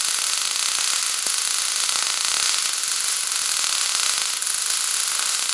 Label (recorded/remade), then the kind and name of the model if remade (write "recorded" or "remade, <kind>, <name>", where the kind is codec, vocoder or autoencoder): recorded